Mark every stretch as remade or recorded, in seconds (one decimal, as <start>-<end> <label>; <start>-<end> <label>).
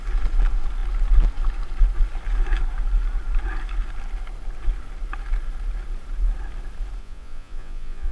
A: 0.0-7.0 recorded; 7.0-8.1 remade